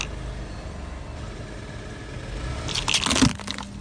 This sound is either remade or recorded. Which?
recorded